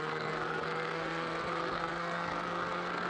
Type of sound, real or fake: fake